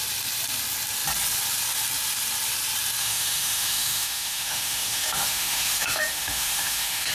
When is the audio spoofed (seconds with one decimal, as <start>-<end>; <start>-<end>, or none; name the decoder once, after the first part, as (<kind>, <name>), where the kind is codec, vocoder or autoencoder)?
3.0-7.1 (autoencoder, DAC-VAE)